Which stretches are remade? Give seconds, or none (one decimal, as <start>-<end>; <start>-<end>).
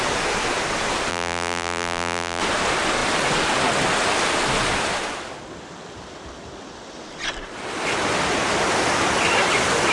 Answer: 1.1-2.4